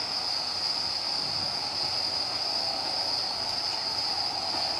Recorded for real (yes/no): yes